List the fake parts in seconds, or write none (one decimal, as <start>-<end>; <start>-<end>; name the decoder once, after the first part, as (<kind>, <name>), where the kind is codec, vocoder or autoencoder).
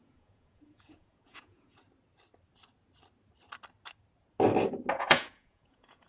0.0-1.8 (vocoder, Vocos); 4.9-6.1